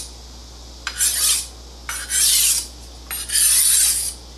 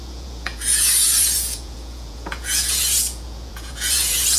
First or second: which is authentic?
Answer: first